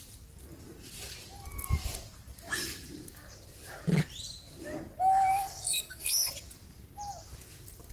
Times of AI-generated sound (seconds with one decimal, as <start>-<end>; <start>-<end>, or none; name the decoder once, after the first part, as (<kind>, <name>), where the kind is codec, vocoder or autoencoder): 5.3-6.3 (codec, SNAC)